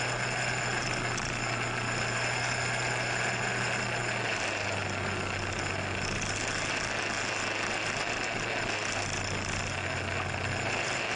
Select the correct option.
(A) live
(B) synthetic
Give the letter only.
A